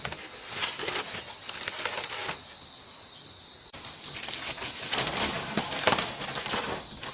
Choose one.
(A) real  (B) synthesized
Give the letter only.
A